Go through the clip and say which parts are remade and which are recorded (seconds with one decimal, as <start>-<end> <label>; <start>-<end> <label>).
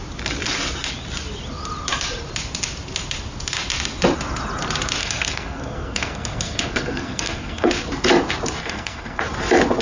0.0-5.0 recorded; 5.0-7.7 remade; 7.7-8.6 recorded; 8.6-9.2 remade; 9.2-9.8 recorded